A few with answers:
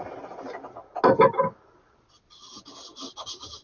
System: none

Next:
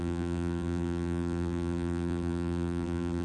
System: vocoder, BigVGAN v2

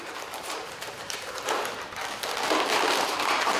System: vocoder, BigVGAN v2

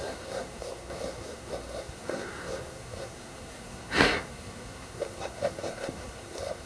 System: codec, SNAC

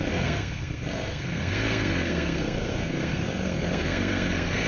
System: codec, SNAC